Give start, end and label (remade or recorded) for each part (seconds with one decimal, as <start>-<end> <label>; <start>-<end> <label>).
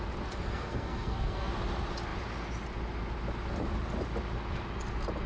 0.0-0.5 recorded; 0.5-1.5 remade; 1.5-5.3 recorded